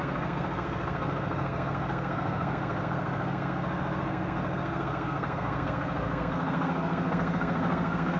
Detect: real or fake fake